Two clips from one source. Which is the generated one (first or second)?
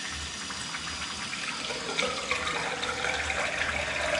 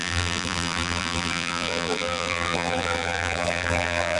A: second